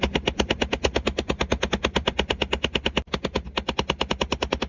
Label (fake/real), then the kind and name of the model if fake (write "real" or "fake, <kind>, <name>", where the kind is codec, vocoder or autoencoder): real